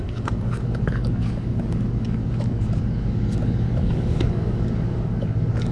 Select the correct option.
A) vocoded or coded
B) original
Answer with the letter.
A